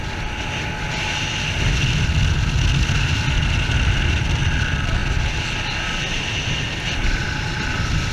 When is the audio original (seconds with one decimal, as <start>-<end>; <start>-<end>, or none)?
0.0-8.1